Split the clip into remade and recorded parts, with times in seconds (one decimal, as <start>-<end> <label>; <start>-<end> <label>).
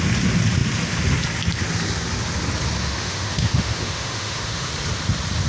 0.0-2.8 recorded; 2.8-4.7 remade; 4.7-5.5 recorded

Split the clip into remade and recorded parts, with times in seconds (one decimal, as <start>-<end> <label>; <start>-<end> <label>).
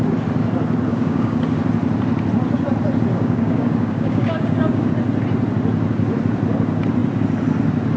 0.0-0.9 recorded; 0.9-1.4 remade; 1.4-3.1 recorded; 3.1-4.9 remade; 4.9-8.0 recorded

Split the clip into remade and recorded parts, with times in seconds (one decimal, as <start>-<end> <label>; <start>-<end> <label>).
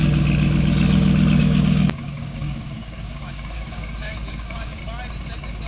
0.0-1.4 recorded; 1.4-4.8 remade; 4.8-5.7 recorded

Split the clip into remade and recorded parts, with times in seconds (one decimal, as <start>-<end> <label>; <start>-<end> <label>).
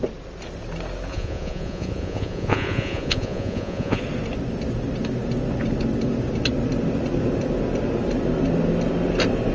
0.0-1.1 recorded; 1.1-4.0 remade; 4.0-9.5 recorded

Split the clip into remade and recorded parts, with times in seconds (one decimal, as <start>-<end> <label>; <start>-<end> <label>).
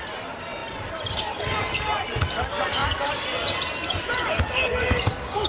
0.0-5.5 recorded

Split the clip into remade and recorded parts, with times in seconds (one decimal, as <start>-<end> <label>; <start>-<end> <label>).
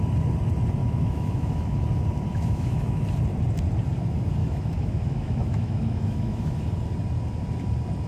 0.0-0.8 recorded; 0.8-1.8 remade; 1.8-2.3 recorded; 2.3-3.0 remade; 3.0-4.4 recorded; 4.4-6.7 remade; 6.7-8.1 recorded